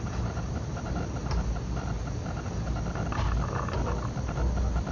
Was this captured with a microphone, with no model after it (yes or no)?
yes